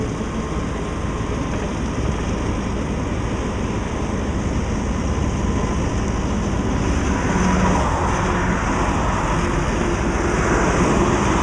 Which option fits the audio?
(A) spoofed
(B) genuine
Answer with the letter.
B